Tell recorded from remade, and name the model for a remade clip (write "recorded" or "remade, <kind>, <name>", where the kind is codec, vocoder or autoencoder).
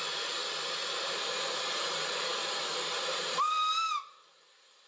remade, vocoder, BigVGAN v2